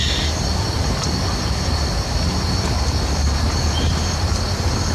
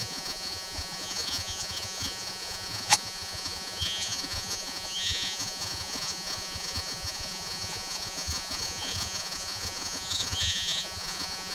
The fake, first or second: second